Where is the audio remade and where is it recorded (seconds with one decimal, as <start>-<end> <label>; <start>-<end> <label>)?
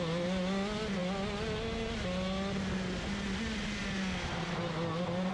0.0-5.3 recorded